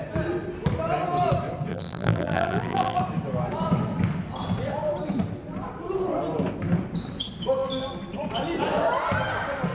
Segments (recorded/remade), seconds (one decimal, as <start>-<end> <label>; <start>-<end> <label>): 0.0-1.7 recorded; 1.7-3.0 remade; 3.0-9.7 recorded